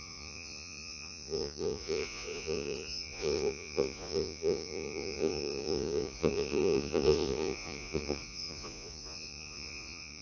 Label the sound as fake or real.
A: fake